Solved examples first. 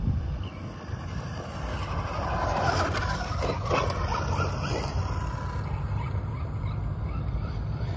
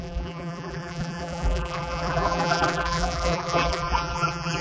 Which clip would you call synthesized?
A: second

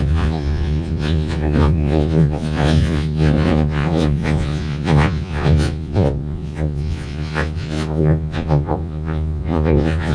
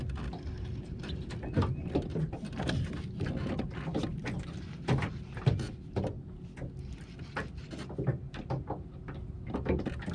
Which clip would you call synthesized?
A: first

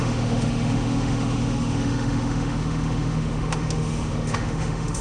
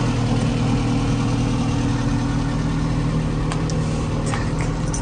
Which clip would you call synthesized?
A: first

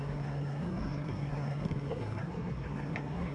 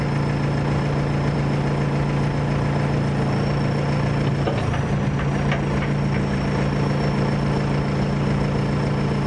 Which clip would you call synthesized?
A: first